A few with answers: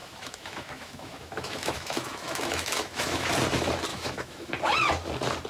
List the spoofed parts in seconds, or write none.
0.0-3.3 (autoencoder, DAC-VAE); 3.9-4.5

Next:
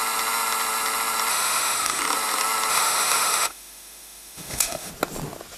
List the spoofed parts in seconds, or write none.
1.3-2.0 (autoencoder, DAC-VAE); 2.7-4.9

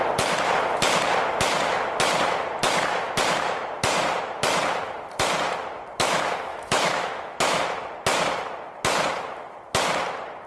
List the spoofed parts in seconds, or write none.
6.5-7.6 (autoencoder, DAC-VAE)

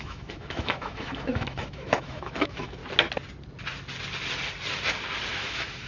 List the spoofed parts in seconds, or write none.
0.0-2.8 (autoencoder, DAC-VAE); 5.3-5.9

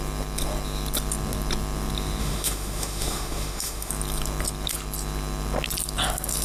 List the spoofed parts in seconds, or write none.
2.2-3.9 (autoencoder, DAC-VAE)

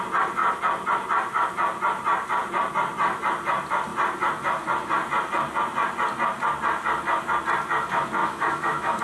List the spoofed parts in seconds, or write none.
8.2-9.0 (autoencoder, DAC-VAE)

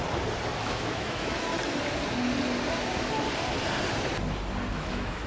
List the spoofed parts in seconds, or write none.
0.6-1.5 (autoencoder, DAC-VAE); 4.7-5.3